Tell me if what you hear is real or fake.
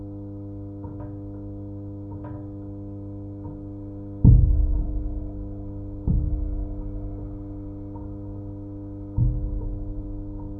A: real